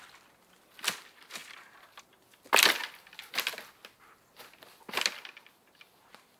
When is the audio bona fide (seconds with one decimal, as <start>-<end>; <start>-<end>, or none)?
0.0-6.4